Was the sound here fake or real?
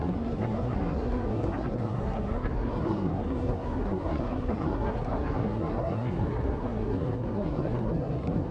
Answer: fake